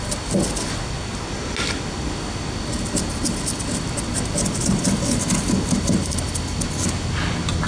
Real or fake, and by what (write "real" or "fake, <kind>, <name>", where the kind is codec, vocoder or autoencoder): real